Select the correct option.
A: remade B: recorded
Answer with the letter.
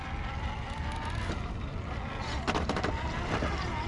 B